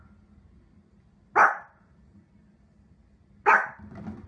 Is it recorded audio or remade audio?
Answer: recorded